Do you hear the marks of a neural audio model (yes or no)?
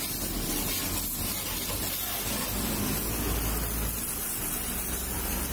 no